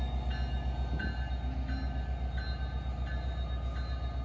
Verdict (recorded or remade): recorded